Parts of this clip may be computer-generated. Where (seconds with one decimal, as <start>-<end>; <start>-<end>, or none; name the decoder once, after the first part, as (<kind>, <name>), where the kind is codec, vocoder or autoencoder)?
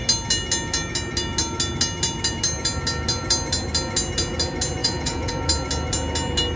4.8-5.3 (vocoder, Vocos)